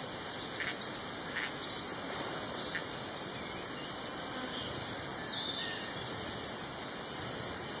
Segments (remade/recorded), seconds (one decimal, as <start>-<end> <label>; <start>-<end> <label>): 0.0-7.8 recorded